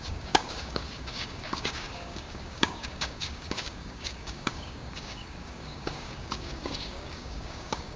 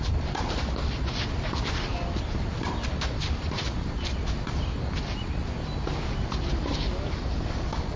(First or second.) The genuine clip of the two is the second